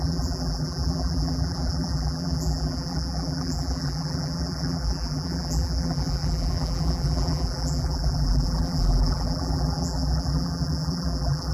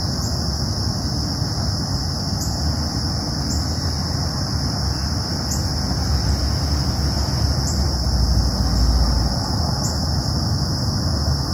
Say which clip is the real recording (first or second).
second